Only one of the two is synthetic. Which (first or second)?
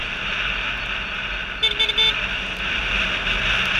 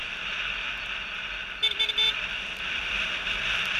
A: second